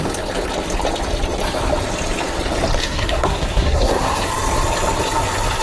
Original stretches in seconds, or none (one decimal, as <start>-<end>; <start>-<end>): 0.0-2.8; 4.3-5.6